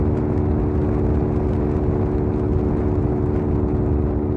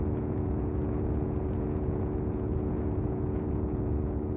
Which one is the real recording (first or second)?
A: first